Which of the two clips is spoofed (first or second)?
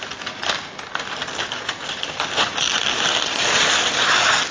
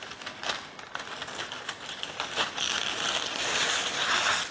first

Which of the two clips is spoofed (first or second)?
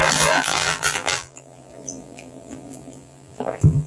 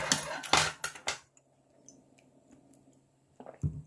first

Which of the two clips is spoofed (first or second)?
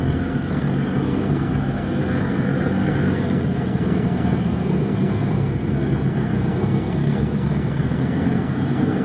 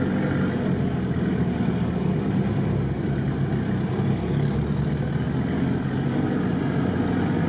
first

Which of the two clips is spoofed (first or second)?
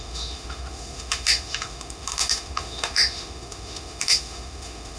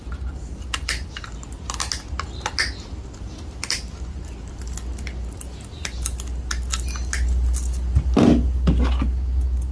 first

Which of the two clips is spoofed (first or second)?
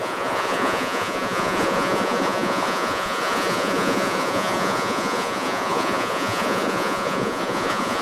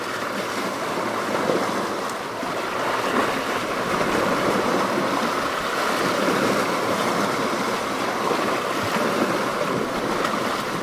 first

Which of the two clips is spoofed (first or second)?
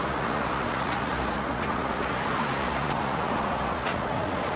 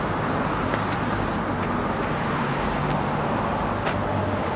first